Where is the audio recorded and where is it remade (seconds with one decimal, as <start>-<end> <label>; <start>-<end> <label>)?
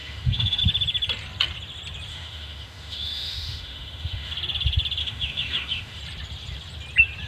0.0-0.6 remade; 0.6-2.1 recorded; 2.1-4.3 remade; 4.3-5.0 recorded; 5.0-6.0 remade; 6.0-7.3 recorded